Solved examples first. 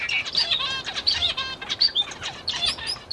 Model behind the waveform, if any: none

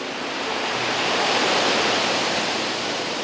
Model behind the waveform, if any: none